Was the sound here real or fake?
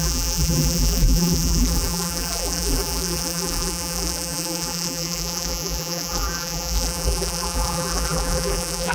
fake